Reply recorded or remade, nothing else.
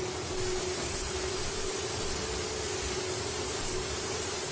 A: recorded